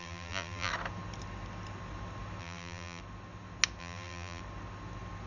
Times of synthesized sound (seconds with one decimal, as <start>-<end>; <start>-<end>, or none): 0.0-0.7; 2.4-3.0; 3.8-4.4